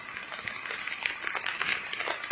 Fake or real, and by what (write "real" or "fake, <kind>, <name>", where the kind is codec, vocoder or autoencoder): real